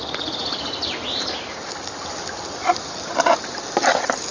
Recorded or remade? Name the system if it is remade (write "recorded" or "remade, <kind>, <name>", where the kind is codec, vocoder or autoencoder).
recorded